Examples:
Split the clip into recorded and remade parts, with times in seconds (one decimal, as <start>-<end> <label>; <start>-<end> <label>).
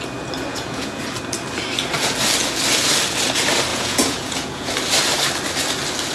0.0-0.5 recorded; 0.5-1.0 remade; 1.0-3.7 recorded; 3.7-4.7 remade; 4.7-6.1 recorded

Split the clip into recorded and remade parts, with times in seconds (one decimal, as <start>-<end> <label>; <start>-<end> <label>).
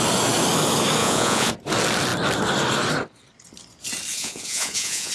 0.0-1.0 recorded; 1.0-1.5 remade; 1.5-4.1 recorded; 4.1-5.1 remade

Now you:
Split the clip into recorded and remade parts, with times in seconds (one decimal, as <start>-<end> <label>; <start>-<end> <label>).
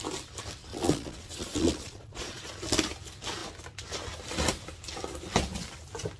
0.0-0.7 recorded; 0.7-2.4 remade; 2.4-6.2 recorded